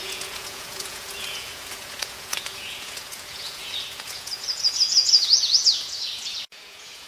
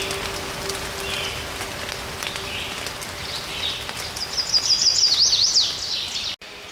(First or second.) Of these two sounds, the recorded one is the second